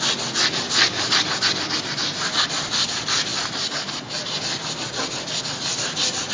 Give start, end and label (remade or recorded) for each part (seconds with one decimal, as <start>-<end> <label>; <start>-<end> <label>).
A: 0.0-6.3 recorded